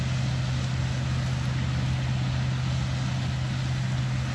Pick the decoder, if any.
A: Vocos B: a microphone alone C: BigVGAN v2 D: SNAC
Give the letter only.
B